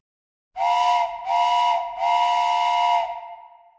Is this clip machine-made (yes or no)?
no